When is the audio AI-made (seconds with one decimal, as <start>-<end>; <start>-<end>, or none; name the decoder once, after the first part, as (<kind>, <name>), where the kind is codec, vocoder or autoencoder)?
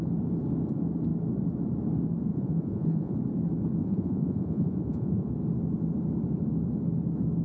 2.3-3.2 (vocoder, Vocos); 3.8-5.3